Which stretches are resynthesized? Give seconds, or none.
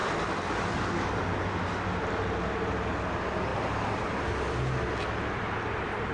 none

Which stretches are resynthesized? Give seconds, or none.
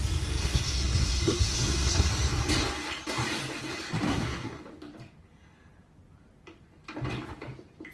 0.4-2.1 (codec, SNAC); 4.1-4.6